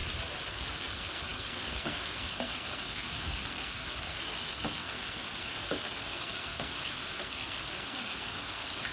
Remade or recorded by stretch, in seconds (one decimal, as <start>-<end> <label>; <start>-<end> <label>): 0.0-0.5 recorded; 0.5-8.9 remade